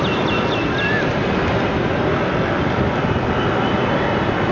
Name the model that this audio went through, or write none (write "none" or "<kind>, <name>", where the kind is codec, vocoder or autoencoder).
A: none